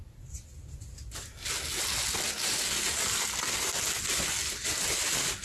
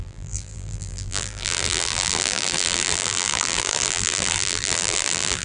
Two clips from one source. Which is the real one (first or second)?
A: first